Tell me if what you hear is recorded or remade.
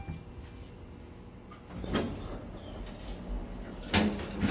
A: recorded